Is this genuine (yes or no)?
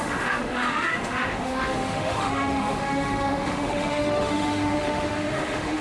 no